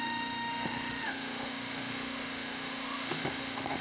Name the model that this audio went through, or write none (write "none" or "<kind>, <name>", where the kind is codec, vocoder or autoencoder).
autoencoder, DAC-VAE